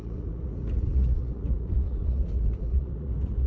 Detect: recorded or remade remade